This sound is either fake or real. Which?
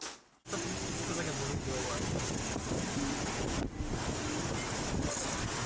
real